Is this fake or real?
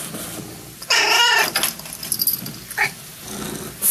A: real